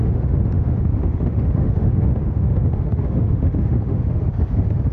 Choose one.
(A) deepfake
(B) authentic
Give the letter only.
A